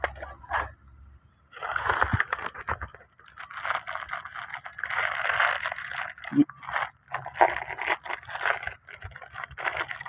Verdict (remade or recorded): recorded